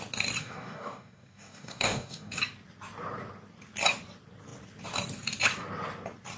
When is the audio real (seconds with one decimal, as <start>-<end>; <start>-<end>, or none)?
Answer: 0.0-0.4; 2.4-6.4